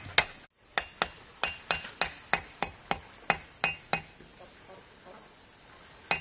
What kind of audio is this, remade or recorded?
recorded